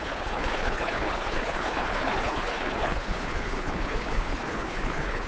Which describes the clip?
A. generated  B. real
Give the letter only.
A